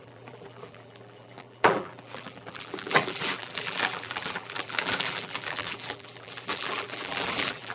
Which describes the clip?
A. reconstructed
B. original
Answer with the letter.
A